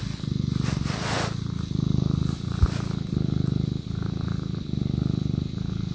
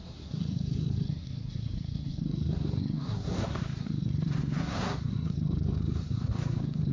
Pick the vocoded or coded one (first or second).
second